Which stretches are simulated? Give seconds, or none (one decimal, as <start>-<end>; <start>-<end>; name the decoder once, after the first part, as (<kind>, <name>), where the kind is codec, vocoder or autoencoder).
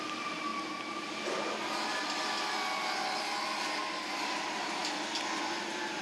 none